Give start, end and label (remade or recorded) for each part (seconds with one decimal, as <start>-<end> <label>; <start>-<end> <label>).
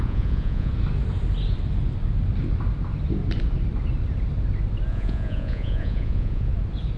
0.0-0.7 remade; 0.7-4.9 recorded; 4.9-6.5 remade; 6.5-7.0 recorded